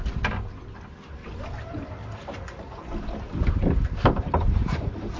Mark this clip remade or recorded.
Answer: recorded